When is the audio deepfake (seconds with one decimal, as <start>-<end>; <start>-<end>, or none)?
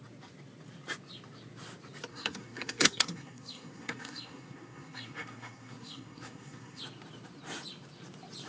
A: 2.1-6.8